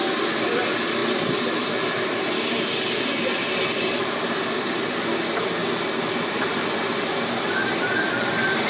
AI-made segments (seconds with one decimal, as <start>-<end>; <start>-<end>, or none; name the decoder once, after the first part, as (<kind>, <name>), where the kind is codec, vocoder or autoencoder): none